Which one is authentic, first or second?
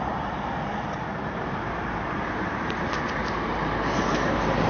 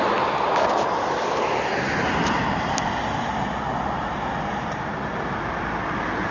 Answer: second